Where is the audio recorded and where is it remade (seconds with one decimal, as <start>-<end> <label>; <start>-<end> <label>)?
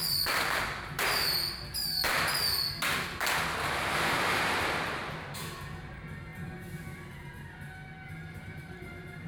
0.0-1.4 remade; 1.4-3.7 recorded; 3.7-5.0 remade; 5.0-5.8 recorded; 5.8-6.3 remade; 6.3-8.4 recorded; 8.4-9.3 remade